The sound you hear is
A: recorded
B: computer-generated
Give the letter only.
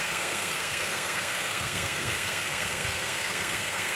B